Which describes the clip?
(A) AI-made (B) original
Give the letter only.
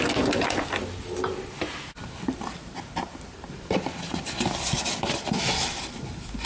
B